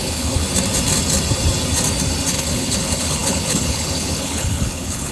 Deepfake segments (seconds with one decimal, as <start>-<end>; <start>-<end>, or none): 0.0-0.4; 2.3-5.1